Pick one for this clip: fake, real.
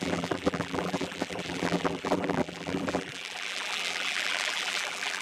fake